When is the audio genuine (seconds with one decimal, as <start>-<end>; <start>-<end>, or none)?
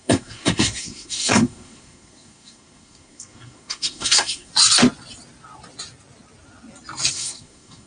4.5-7.1